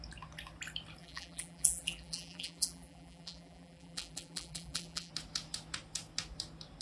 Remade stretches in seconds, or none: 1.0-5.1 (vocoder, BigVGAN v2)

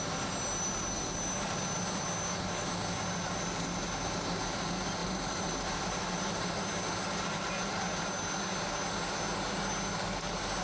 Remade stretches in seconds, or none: 5.0-6.5 (vocoder, BigVGAN v2)

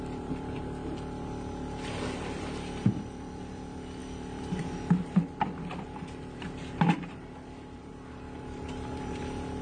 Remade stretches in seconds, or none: 0.0-9.6 (vocoder, BigVGAN v2)

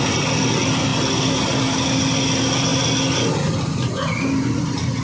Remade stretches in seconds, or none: none